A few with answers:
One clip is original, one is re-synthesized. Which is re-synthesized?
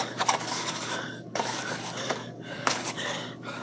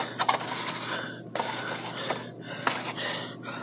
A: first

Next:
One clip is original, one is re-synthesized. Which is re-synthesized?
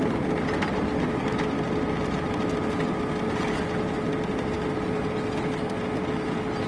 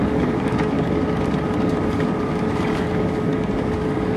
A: second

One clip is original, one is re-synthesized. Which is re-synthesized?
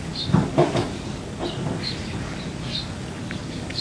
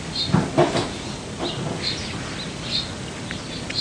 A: first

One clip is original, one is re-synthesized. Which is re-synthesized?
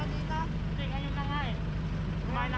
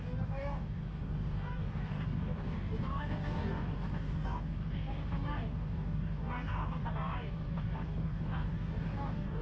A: second